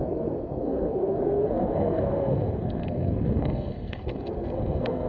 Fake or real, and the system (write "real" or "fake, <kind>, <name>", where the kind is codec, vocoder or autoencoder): fake, codec, SNAC